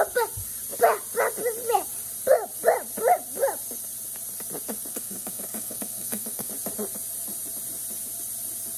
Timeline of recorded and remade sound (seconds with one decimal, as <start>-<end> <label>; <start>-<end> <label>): 0.0-4.9 recorded; 4.9-6.5 remade; 6.5-8.8 recorded